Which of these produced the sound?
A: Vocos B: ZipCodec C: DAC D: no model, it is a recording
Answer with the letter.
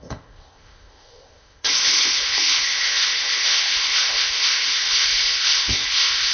B